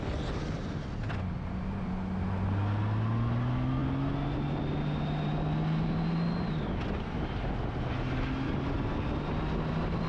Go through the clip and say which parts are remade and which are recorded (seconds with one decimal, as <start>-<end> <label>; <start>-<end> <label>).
0.0-10.1 recorded